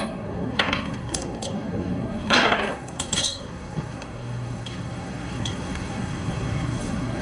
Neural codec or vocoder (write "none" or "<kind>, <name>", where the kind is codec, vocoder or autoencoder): codec, SNAC